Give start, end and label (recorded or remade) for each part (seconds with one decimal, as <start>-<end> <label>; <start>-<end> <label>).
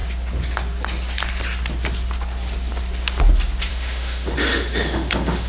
0.0-3.7 recorded; 3.7-5.5 remade